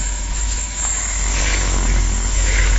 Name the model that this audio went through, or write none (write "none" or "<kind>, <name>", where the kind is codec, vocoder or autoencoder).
autoencoder, DAC-VAE